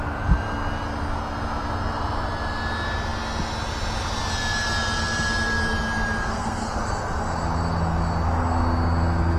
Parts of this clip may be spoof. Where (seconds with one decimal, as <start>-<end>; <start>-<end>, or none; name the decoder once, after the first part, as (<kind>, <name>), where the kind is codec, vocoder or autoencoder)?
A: 6.2-6.8 (codec, SNAC)